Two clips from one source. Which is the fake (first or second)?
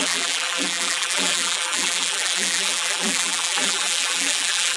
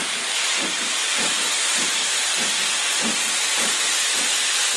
first